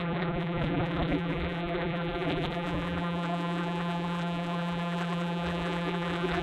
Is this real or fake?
fake